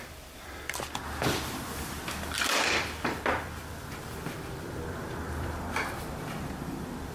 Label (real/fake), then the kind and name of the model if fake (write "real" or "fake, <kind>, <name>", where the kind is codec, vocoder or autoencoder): fake, vocoder, BigVGAN v2